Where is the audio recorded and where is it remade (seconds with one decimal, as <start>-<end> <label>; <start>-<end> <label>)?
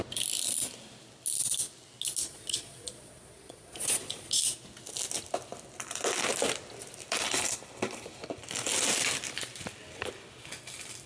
0.0-2.2 recorded; 2.2-4.4 remade; 4.4-11.1 recorded